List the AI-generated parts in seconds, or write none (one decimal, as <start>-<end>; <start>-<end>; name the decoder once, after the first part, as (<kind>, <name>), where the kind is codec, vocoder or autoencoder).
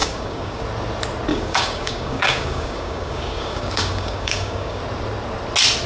0.0-0.6 (codec, DAC); 1.3-4.8